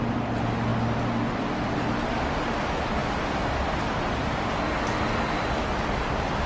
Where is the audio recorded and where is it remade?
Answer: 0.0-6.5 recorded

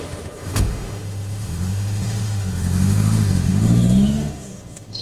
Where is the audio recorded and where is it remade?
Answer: 0.0-5.0 remade

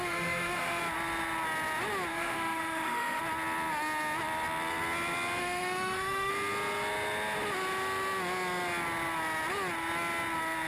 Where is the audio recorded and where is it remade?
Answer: 0.0-0.8 remade; 0.8-2.1 recorded; 2.1-3.2 remade; 3.2-5.4 recorded; 5.4-6.3 remade; 6.3-10.7 recorded